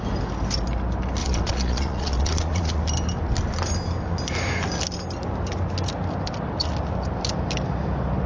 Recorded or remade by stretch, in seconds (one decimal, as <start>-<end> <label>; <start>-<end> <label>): 0.0-1.2 recorded; 1.2-2.8 remade; 2.8-8.3 recorded